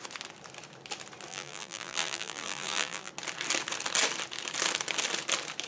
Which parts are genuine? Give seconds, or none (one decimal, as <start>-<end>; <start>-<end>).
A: 0.0-1.3; 3.1-5.7